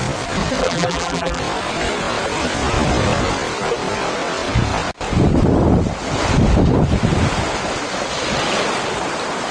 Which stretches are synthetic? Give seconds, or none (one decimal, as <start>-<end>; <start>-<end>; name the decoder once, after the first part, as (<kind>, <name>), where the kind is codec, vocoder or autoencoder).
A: 0.6-1.4 (vocoder, BigVGAN v2)